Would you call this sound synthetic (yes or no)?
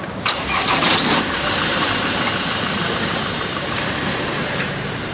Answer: yes